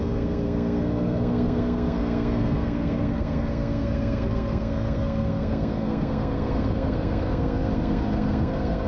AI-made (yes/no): yes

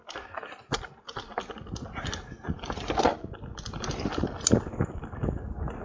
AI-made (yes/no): no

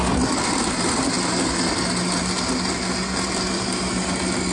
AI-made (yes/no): no